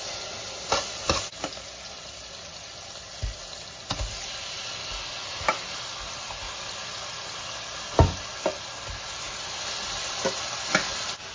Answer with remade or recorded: recorded